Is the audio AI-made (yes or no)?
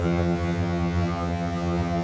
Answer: yes